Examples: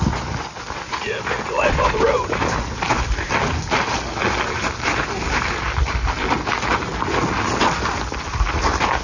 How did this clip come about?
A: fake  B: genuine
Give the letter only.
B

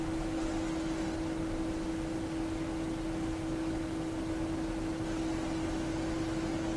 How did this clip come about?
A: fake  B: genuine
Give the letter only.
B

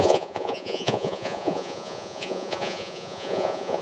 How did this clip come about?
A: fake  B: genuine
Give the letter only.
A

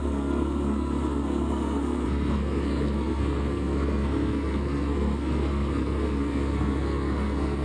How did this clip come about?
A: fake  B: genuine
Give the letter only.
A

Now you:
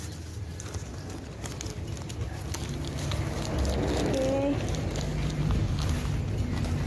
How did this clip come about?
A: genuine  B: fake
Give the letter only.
A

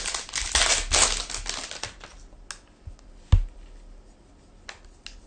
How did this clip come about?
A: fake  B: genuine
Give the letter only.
B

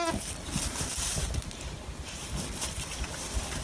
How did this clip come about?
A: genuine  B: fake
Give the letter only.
A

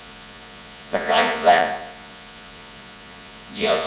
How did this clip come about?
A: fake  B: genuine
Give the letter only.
A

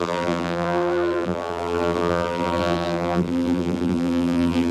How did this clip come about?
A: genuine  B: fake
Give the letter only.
B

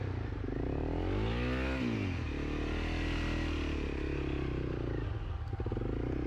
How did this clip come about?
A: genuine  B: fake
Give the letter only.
A